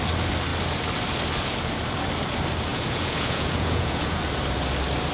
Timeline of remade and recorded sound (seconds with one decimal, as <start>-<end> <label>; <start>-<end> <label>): 0.0-2.7 recorded; 2.7-4.2 remade; 4.2-5.1 recorded